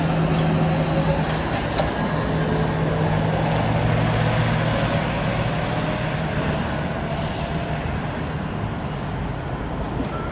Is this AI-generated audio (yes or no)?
no